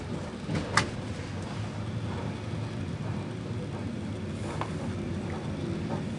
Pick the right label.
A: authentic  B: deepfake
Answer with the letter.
A